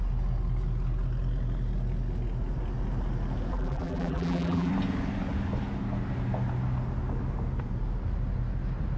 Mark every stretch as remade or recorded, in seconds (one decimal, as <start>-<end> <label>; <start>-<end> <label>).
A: 0.0-3.5 recorded; 3.5-4.7 remade; 4.7-9.0 recorded